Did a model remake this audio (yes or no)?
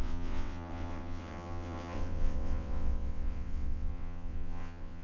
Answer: yes